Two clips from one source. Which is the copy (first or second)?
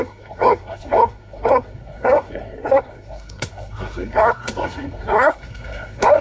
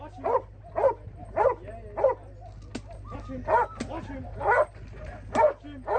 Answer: first